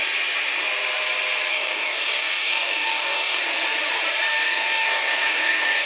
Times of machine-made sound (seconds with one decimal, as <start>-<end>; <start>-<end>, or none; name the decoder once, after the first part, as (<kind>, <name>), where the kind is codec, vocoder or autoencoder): 1.5-3.4 (codec, DAC); 4.4-5.9